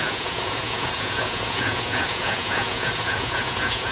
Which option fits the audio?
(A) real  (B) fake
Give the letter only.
B